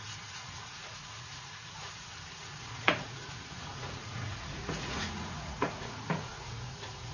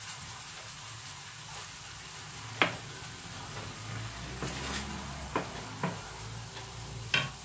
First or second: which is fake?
first